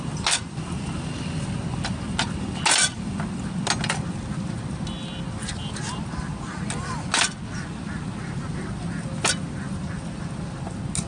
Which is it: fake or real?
real